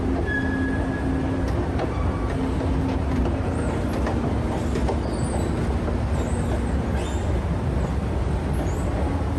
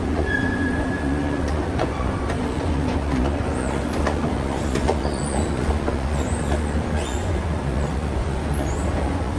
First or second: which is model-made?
second